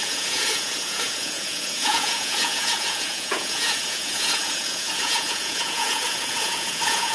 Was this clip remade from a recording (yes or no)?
yes